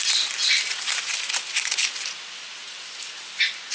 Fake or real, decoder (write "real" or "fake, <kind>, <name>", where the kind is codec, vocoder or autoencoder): real